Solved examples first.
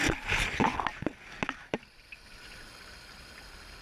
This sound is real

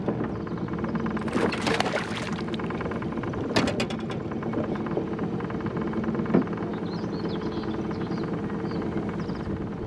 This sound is real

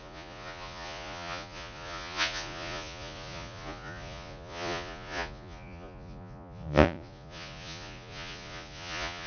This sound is fake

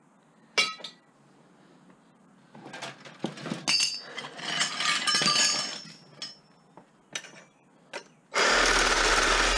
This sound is real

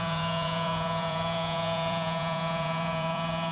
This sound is fake